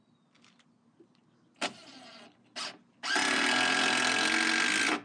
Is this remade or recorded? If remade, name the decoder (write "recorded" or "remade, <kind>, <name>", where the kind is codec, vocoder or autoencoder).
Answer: recorded